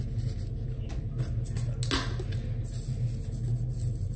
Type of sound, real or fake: real